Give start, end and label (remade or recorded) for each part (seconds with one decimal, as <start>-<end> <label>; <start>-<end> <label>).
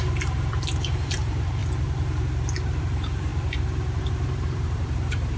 0.0-1.6 remade; 1.6-2.8 recorded; 2.8-5.4 remade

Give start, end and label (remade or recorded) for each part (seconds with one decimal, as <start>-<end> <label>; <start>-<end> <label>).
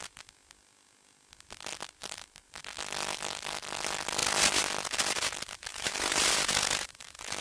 0.0-2.0 recorded; 2.0-2.6 remade; 2.6-5.7 recorded; 5.7-6.3 remade; 6.3-7.4 recorded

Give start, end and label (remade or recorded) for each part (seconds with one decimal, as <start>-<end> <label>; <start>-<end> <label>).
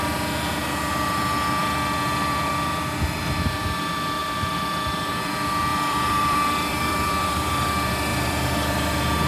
0.0-1.6 recorded; 1.6-2.5 remade; 2.5-5.7 recorded; 5.7-7.5 remade; 7.5-8.1 recorded; 8.1-9.3 remade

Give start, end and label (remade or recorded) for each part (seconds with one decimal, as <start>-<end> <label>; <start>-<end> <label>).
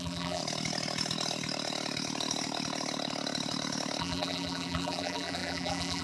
0.0-0.4 remade; 0.4-4.0 recorded; 4.0-6.0 remade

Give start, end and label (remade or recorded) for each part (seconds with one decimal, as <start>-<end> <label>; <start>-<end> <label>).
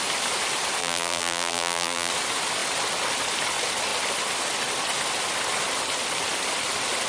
0.0-0.8 recorded; 0.8-2.1 remade; 2.1-7.1 recorded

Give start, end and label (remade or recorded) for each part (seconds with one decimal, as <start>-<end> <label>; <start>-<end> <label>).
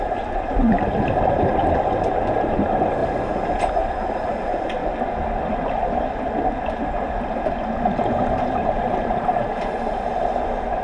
0.0-4.8 remade; 4.8-8.0 recorded; 8.0-10.8 remade